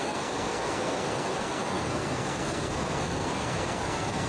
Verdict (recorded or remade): remade